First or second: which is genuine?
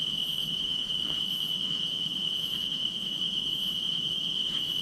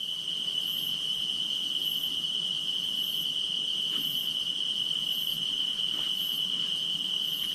second